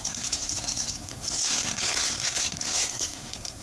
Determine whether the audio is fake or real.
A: fake